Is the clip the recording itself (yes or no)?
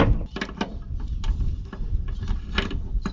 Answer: yes